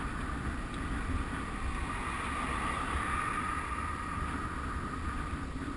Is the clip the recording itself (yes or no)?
yes